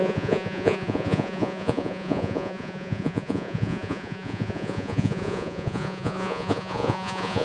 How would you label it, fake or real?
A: fake